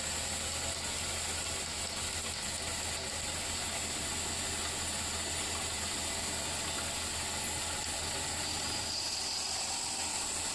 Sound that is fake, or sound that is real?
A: real